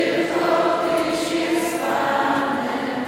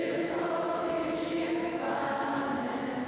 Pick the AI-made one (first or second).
second